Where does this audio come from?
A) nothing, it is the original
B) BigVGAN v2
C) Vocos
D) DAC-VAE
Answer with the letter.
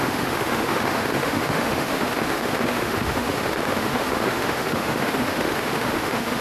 D